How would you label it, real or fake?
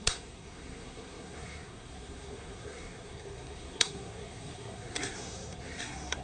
fake